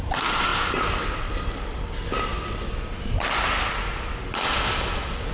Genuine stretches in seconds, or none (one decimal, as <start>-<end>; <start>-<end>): 0.0-5.3